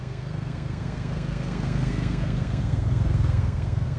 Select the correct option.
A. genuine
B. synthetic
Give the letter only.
B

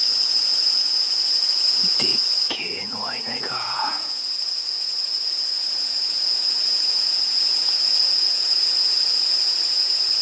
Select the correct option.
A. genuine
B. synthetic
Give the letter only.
B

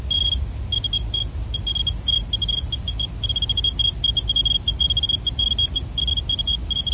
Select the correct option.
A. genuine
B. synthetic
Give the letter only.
A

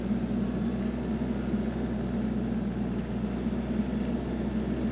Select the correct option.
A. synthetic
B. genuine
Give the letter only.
B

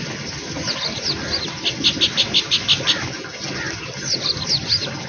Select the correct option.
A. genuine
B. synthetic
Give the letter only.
A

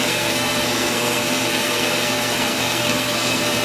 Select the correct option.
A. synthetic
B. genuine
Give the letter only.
A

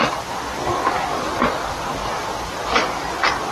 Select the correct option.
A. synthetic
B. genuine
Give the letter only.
B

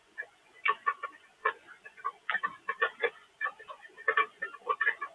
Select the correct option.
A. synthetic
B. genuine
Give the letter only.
A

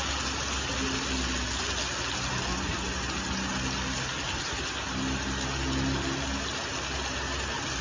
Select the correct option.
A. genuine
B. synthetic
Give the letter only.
A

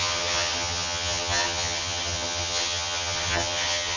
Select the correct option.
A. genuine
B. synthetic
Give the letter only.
B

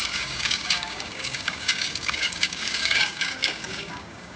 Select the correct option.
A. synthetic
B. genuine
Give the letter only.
A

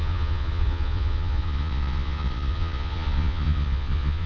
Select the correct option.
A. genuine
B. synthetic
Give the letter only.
B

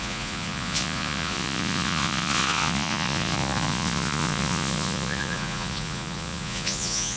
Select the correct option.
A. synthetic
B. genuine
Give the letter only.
A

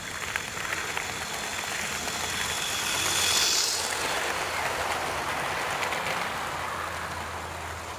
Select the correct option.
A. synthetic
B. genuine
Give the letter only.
B